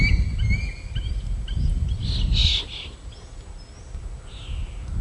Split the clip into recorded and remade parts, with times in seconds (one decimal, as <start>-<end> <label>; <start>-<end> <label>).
0.0-5.0 recorded